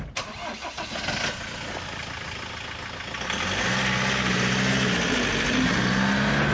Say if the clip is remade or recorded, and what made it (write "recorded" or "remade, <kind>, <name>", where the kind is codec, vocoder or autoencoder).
recorded